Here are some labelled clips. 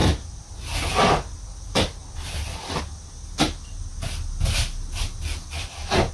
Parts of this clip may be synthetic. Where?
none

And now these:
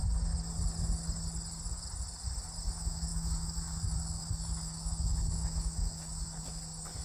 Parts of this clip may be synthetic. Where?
2.7-7.0 (autoencoder, DAC-VAE)

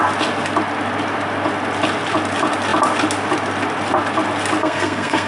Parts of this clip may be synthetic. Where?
4.6-5.3 (codec, SNAC)

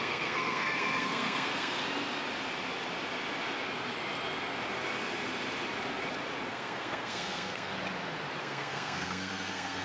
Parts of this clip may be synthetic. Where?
0.0-1.8 (codec, SNAC); 6.5-7.7; 8.4-9.8